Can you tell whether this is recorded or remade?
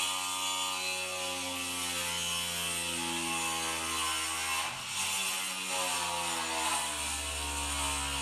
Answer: recorded